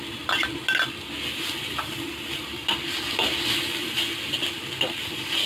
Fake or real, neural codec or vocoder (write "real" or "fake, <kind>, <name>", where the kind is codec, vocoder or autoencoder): real